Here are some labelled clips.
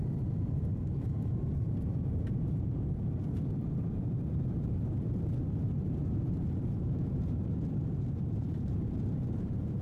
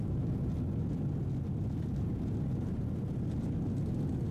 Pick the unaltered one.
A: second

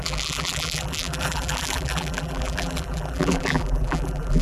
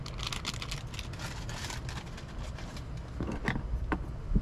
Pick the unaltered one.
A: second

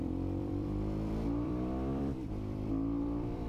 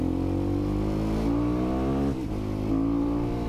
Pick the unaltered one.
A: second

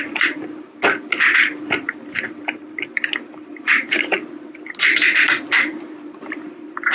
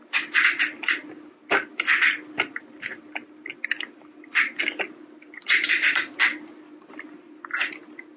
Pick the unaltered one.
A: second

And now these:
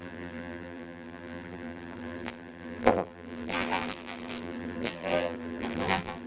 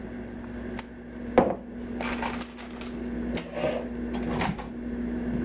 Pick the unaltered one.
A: second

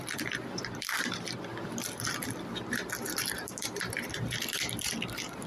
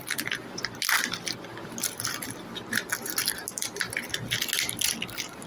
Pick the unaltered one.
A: second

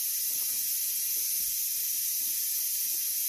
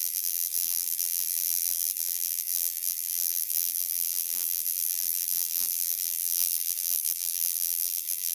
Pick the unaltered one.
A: first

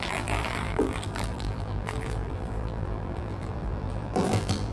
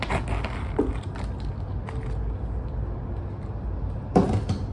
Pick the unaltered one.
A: second